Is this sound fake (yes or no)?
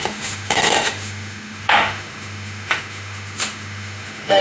yes